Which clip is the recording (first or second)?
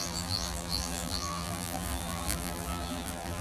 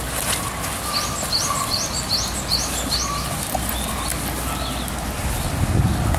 second